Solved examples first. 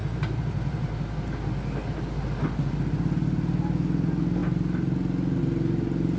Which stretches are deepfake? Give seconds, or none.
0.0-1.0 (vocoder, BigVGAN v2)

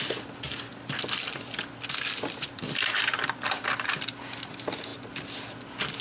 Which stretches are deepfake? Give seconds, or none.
0.7-3.5 (vocoder, BigVGAN v2)